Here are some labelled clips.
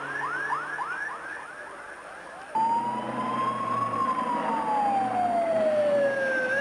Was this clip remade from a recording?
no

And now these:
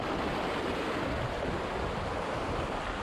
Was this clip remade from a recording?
no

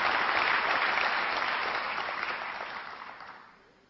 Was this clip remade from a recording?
no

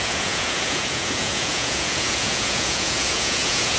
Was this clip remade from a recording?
yes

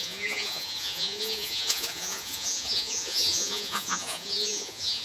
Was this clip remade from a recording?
yes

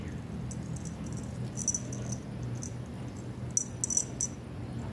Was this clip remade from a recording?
no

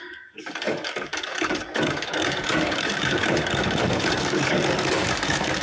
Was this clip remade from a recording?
yes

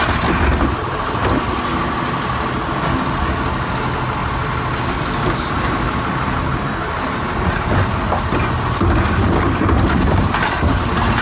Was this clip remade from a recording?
no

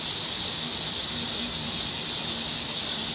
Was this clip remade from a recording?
no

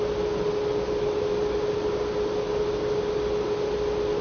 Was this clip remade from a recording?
no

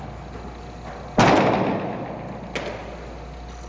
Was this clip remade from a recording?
no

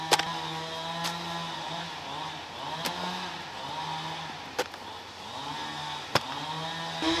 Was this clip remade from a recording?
no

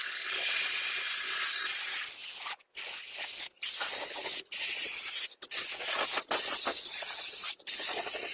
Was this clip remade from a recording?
no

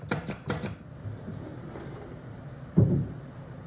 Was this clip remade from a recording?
no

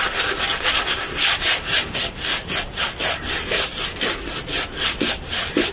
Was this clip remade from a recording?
no